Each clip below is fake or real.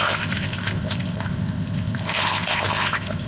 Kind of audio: fake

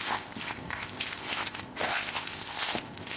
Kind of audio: fake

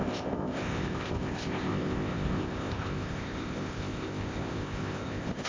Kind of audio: fake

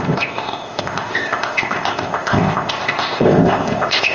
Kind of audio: fake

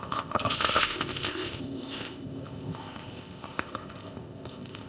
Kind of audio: fake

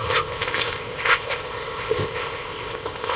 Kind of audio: fake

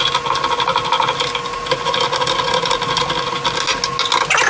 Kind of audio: real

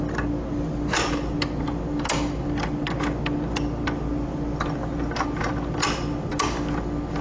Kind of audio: real